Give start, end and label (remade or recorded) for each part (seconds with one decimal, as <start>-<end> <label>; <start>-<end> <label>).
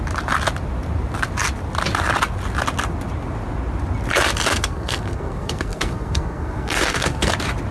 0.0-4.5 recorded; 4.5-7.3 remade; 7.3-7.7 recorded